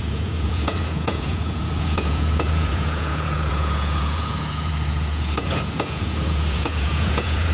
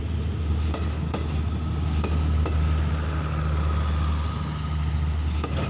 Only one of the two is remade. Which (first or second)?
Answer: first